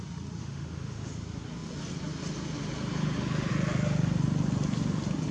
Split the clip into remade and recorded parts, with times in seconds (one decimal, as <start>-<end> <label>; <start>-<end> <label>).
0.0-0.4 recorded; 0.4-1.1 remade; 1.1-5.3 recorded